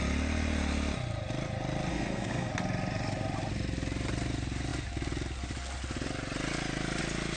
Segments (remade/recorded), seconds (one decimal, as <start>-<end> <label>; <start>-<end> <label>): 0.0-1.9 recorded; 1.9-2.5 remade; 2.5-7.4 recorded